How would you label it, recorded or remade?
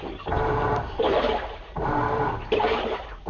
remade